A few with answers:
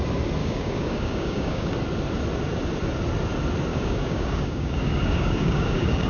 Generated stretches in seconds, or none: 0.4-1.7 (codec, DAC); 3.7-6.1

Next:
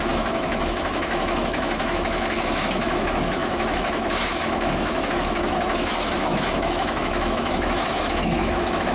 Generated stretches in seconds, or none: 0.0-8.9 (autoencoder, DAC-VAE)